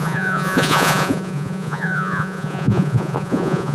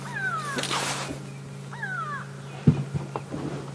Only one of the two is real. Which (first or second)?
second